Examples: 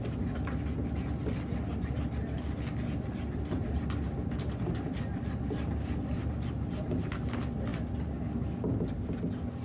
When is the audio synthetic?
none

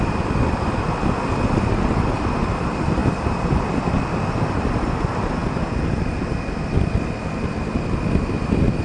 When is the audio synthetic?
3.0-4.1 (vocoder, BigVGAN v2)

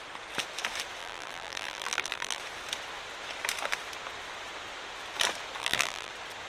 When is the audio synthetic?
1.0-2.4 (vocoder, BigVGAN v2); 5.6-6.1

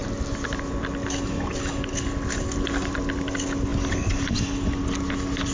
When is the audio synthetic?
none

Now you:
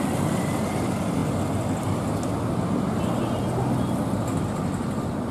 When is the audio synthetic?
none